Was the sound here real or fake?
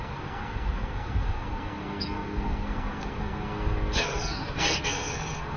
fake